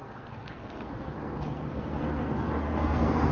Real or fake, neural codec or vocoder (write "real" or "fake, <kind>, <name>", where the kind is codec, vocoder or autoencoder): fake, codec, SNAC